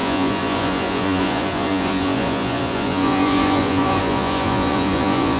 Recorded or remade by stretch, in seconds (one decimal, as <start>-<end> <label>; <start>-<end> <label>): 0.0-5.4 remade